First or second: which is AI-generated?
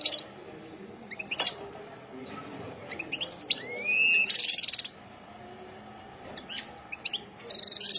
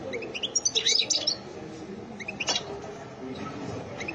first